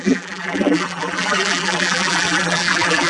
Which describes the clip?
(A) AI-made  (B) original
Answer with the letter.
A